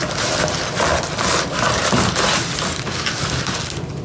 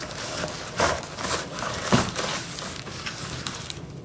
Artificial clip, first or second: second